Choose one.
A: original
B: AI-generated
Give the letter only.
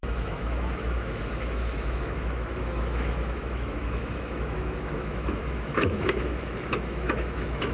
B